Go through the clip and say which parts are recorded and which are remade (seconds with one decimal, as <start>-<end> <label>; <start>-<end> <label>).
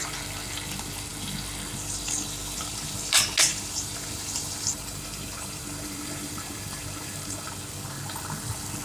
0.0-3.5 recorded; 3.5-7.5 remade; 7.5-8.8 recorded